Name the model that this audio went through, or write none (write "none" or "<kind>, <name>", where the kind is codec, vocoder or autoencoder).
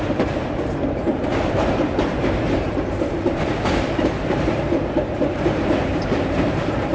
vocoder, BigVGAN v2